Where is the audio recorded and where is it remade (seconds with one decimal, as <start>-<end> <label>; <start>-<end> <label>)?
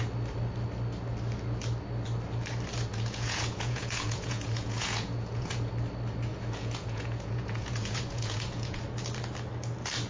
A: 0.0-2.9 recorded; 2.9-5.7 remade; 5.7-6.3 recorded; 6.3-8.8 remade; 8.8-10.1 recorded